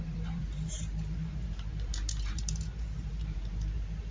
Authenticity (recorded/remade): remade